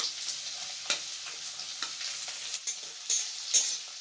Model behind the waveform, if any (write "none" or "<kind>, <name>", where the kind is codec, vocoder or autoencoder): none